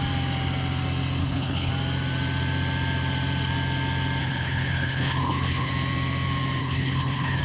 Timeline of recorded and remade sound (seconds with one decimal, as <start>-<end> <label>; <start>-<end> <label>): 0.0-1.2 recorded; 1.2-1.7 remade; 1.7-4.2 recorded; 4.2-5.7 remade; 5.7-6.6 recorded; 6.6-7.4 remade